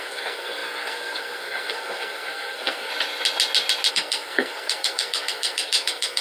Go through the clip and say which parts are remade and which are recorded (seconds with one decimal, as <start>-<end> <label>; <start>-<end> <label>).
0.0-2.9 remade; 2.9-3.9 recorded; 3.9-6.2 remade